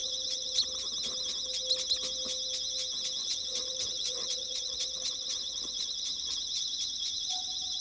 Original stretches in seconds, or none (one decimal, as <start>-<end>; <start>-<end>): 0.6-3.2